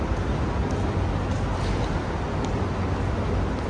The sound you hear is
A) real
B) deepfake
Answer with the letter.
A